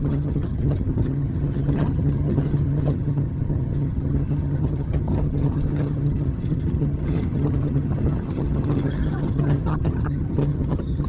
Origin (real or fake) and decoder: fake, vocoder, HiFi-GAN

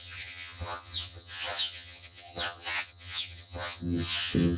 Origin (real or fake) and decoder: fake, vocoder, HiFi-GAN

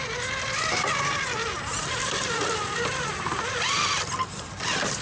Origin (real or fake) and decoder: real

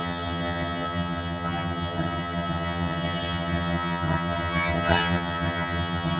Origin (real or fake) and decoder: fake, vocoder, HiFi-GAN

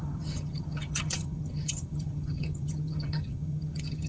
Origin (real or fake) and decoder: fake, vocoder, HiFi-GAN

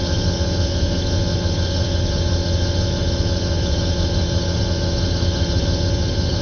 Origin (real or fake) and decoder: fake, vocoder, HiFi-GAN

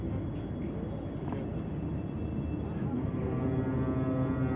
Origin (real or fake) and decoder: real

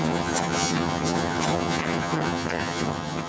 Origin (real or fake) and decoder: fake, vocoder, HiFi-GAN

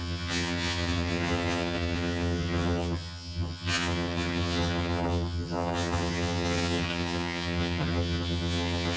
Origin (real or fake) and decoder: fake, vocoder, HiFi-GAN